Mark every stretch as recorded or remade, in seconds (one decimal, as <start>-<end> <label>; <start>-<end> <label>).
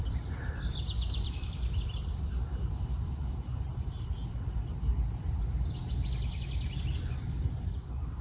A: 0.0-4.2 remade; 4.2-7.1 recorded; 7.1-8.2 remade